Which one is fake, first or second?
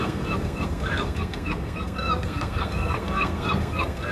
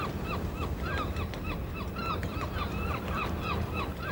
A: first